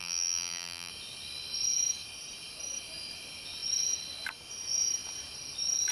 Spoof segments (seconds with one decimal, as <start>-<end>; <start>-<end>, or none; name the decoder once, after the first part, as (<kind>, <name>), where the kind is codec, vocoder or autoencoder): 0.0-0.9 (vocoder, BigVGAN v2)